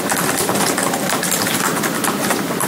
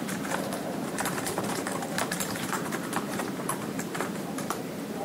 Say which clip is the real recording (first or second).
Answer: first